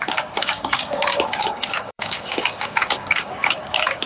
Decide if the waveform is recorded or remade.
remade